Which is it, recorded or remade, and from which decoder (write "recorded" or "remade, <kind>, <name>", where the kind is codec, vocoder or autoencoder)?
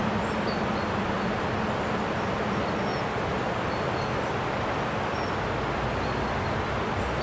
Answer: recorded